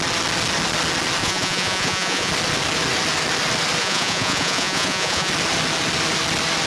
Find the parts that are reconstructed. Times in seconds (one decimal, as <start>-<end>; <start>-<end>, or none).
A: 1.2-2.3; 3.8-5.3